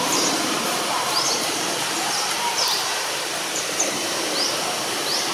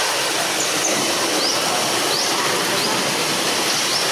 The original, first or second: second